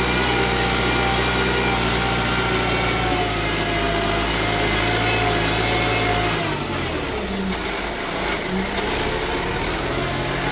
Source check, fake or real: real